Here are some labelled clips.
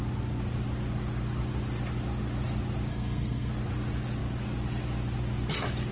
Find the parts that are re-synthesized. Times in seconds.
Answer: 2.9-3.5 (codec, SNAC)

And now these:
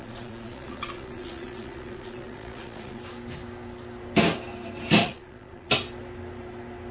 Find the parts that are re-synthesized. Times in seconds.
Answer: 0.0-3.0 (vocoder, Vocos); 5.0-5.7

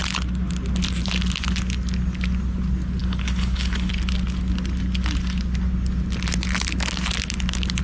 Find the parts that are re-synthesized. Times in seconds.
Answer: 3.0-3.9 (codec, HILCodec)

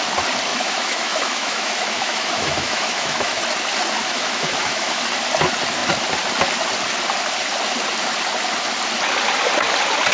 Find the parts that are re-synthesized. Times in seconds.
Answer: 0.5-3.4 (autoencoder, DAC-VAE); 4.0-5.0

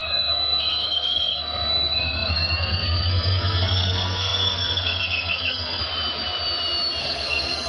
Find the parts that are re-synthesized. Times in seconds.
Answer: 0.0-5.8 (codec, SNAC); 7.0-7.7

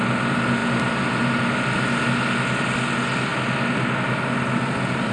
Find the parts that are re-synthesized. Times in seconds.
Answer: none